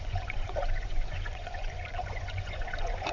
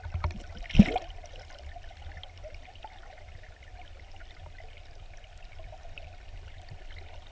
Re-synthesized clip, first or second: first